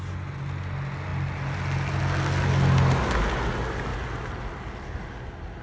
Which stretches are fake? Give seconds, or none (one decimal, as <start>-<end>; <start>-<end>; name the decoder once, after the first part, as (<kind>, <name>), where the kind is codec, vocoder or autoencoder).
none